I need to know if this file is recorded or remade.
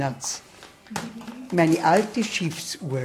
recorded